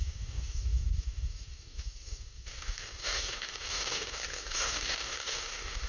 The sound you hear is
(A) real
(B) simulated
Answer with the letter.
B